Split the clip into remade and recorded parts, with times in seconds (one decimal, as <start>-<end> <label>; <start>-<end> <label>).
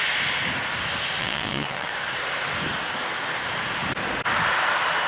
0.0-1.2 recorded; 1.2-1.9 remade; 1.9-5.1 recorded